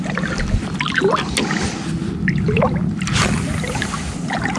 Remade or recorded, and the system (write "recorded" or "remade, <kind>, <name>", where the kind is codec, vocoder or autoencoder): recorded